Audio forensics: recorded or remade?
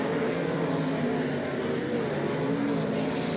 recorded